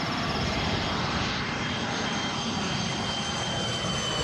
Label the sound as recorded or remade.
recorded